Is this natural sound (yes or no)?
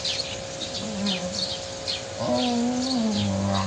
yes